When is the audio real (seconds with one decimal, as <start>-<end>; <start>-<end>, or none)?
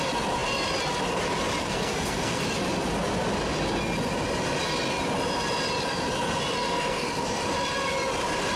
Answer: 0.0-1.6; 2.4-6.6; 7.4-8.6